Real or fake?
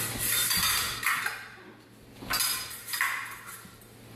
real